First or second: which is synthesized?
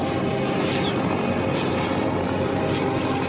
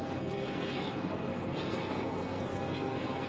second